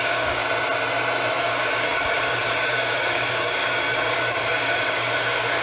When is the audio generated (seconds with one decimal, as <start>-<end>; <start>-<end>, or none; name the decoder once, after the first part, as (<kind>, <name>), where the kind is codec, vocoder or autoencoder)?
0.0-0.4 (codec, DAC); 1.4-5.6